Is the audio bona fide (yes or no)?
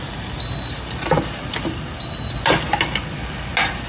yes